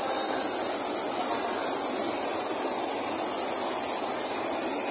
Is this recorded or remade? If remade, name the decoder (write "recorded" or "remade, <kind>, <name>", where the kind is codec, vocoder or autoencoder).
recorded